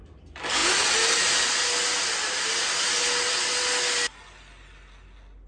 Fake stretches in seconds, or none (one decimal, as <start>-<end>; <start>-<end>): none